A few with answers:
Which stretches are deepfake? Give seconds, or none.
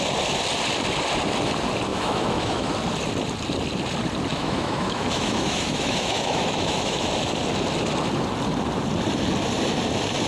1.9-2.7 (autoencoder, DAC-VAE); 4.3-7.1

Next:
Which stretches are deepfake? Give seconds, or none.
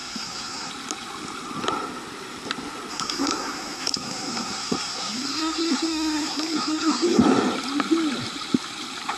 0.0-0.7 (codec, SNAC); 2.9-7.2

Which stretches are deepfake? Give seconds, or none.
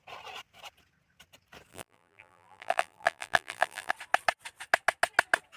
1.7-3.9 (vocoder, BigVGAN v2)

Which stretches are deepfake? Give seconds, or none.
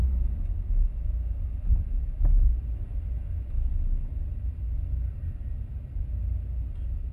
none